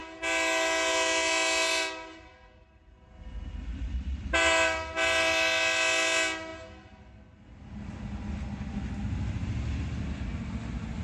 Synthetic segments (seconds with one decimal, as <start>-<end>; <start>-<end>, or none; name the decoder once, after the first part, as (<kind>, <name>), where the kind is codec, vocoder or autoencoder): none